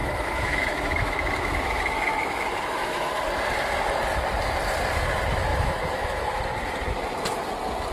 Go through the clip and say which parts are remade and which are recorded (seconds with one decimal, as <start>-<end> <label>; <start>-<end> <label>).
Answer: 0.0-3.1 remade; 3.1-5.5 recorded; 5.5-6.4 remade; 6.4-7.9 recorded